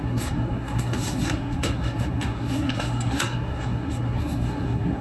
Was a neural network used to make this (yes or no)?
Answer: yes